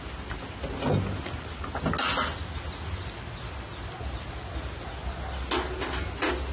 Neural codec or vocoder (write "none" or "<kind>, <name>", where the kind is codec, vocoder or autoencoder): none